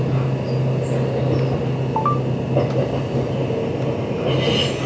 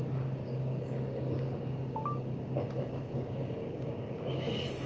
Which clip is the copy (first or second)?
second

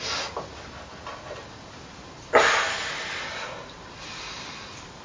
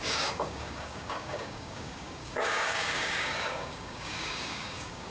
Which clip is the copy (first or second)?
second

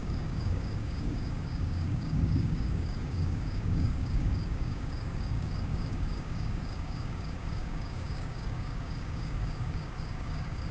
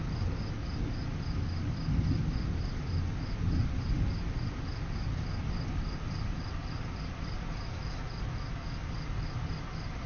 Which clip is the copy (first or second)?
first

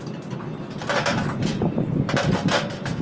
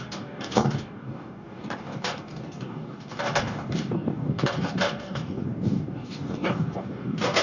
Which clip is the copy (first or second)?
second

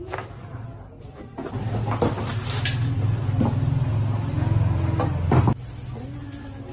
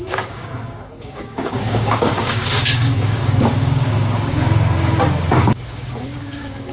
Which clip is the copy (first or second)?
second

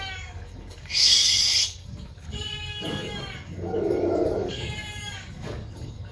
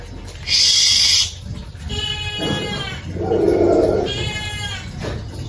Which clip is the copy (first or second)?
first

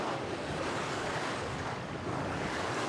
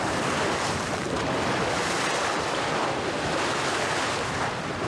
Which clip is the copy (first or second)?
first